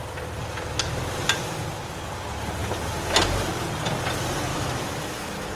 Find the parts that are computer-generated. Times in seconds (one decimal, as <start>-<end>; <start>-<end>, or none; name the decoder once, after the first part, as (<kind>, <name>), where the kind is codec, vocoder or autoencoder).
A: 4.5-5.6 (autoencoder, DAC-VAE)